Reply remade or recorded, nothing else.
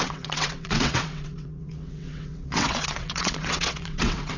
remade